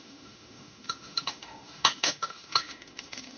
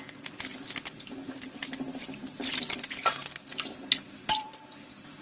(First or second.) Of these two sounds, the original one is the second